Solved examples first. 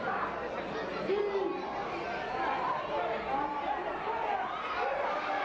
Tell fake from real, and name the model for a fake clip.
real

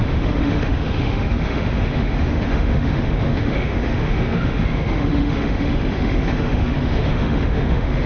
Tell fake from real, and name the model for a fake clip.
fake, autoencoder, DAC-VAE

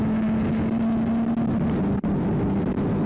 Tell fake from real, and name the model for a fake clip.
real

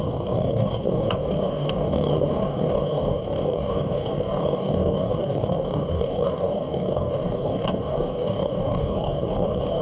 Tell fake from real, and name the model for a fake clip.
fake, codec, DAC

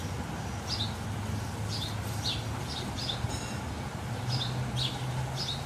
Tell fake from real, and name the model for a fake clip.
fake, vocoder, BigVGAN v2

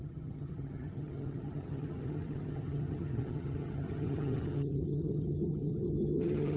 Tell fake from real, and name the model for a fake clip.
fake, vocoder, HiFi-GAN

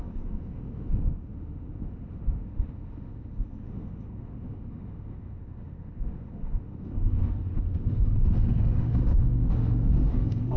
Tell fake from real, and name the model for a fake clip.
fake, autoencoder, DAC-VAE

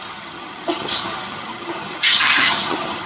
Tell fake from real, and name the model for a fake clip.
fake, vocoder, HiFi-GAN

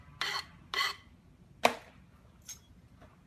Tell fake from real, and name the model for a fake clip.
real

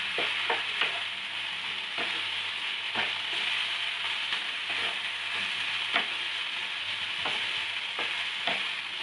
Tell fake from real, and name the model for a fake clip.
real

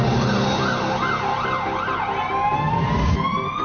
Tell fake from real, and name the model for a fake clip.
real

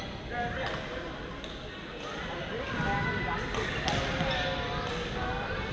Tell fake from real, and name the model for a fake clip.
real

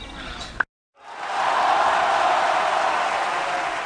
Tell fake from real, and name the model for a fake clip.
real